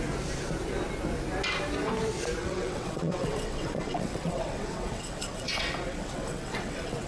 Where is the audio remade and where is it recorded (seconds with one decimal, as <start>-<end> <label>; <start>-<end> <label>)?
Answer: 0.0-2.4 recorded; 2.4-7.1 remade